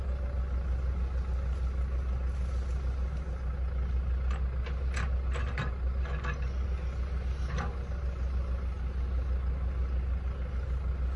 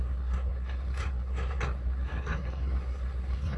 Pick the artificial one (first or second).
second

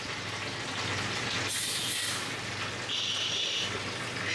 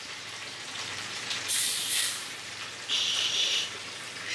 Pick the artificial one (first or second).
second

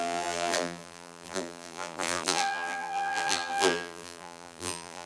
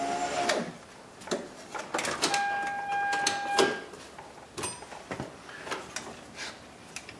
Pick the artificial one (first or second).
first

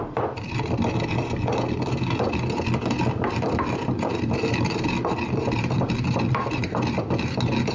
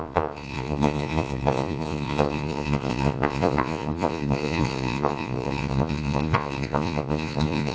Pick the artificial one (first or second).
second